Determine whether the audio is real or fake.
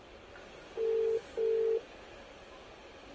real